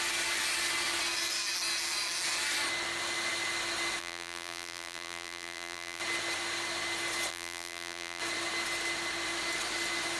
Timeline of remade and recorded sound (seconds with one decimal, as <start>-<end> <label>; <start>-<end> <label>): 0.0-4.0 recorded; 4.0-6.0 remade; 6.0-7.3 recorded; 7.3-8.2 remade; 8.2-10.2 recorded